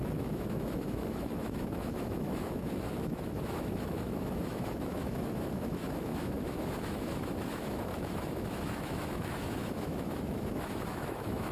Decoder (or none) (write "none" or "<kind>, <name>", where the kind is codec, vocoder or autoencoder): autoencoder, DAC-VAE